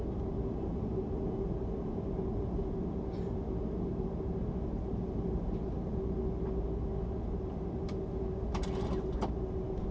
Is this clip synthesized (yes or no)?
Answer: no